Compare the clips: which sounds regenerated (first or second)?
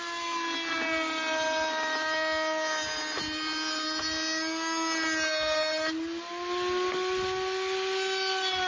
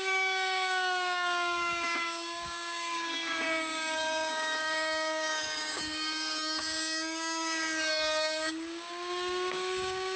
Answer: second